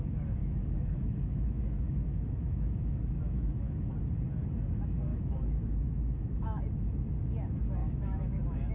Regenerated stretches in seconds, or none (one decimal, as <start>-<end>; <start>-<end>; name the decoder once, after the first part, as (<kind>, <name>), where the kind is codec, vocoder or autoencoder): 0.4-3.9 (autoencoder, DAC-VAE); 5.1-6.6; 7.8-8.7